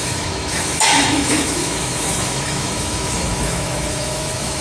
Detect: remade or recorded remade